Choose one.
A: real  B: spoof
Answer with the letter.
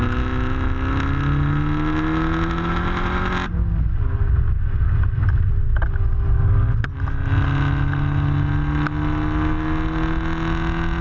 A